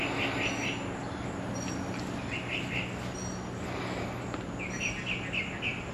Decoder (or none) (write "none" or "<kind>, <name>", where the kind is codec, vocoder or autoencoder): none